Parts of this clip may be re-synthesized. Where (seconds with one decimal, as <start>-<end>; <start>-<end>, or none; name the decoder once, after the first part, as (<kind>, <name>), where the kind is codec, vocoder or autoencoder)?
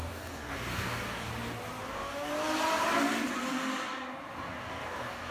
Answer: 0.0-1.3 (codec, DAC); 1.9-2.3; 4.6-5.3